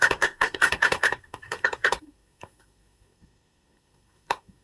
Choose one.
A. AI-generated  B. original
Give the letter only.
A